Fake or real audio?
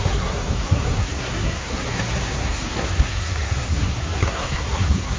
fake